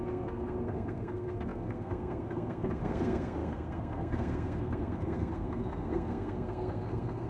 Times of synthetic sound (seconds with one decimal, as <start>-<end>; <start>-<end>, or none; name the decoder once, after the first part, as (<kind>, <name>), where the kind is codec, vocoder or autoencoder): 0.0-7.3 (codec, SNAC)